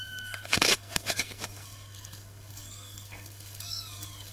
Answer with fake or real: fake